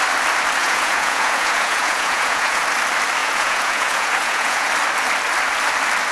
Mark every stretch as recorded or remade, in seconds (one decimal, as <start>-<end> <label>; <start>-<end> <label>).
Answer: 0.0-0.6 recorded; 0.6-2.6 remade; 2.6-3.2 recorded; 3.2-4.7 remade; 4.7-6.1 recorded